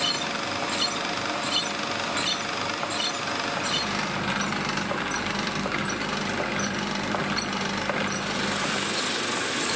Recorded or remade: recorded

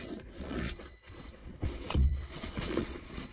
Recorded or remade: remade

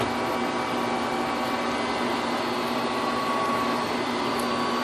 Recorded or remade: recorded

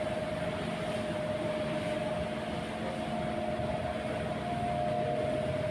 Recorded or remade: recorded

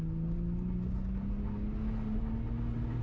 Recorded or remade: recorded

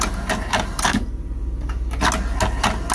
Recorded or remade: recorded